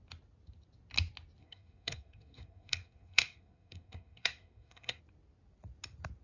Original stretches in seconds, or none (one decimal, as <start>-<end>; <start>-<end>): 0.0-1.4; 5.0-6.2